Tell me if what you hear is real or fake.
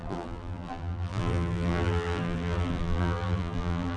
fake